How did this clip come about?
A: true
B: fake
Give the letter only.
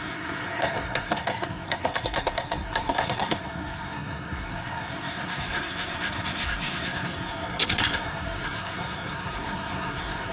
B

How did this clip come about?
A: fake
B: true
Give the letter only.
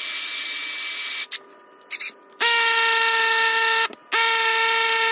B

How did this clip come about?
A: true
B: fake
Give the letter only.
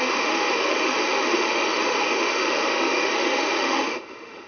B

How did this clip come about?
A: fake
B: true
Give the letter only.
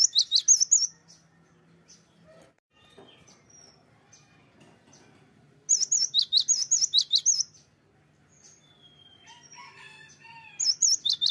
B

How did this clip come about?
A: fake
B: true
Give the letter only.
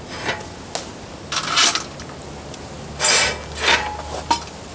B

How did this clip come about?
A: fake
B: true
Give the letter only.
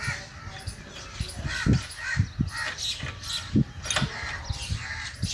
B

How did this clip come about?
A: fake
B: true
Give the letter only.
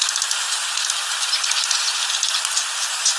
B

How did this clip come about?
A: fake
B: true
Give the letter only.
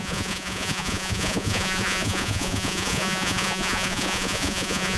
A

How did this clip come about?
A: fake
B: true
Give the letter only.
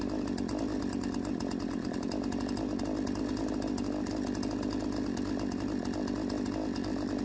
B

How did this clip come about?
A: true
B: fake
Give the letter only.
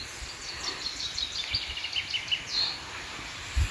A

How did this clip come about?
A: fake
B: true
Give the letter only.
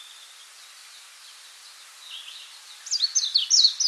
B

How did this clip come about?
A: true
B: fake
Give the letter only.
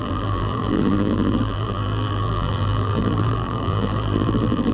B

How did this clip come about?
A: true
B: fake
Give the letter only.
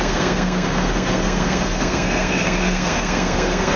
B